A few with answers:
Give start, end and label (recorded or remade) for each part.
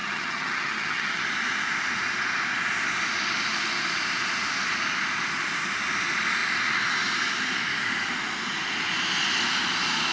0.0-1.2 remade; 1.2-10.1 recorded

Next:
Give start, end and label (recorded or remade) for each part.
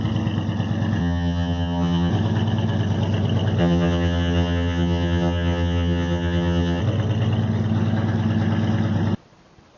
0.0-1.0 recorded; 1.0-2.1 remade; 2.1-3.6 recorded; 3.6-6.8 remade; 6.8-9.8 recorded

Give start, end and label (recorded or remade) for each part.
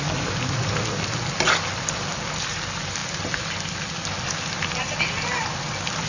0.0-6.1 recorded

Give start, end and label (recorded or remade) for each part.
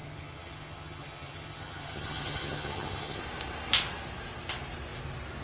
0.0-3.2 remade; 3.2-5.4 recorded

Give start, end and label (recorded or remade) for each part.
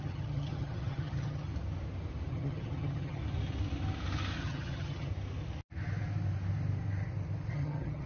0.0-1.5 remade; 1.5-2.3 recorded; 2.3-3.2 remade; 3.2-4.4 recorded; 4.4-5.1 remade; 5.1-7.5 recorded; 7.5-8.1 remade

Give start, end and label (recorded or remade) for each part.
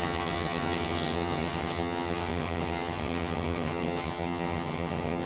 0.0-5.3 remade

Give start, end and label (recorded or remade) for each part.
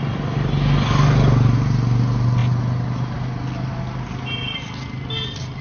0.0-5.6 recorded